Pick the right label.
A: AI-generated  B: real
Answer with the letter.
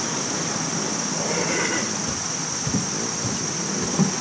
B